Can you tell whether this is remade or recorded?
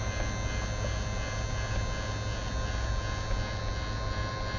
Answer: recorded